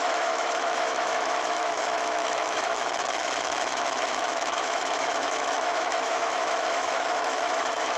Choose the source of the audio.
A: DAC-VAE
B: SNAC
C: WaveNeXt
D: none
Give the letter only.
A